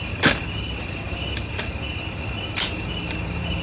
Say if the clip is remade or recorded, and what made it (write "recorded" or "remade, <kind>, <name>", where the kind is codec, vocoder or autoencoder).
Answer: recorded